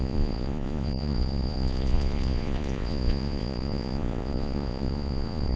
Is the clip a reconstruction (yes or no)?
yes